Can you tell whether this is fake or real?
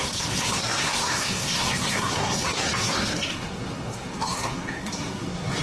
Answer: fake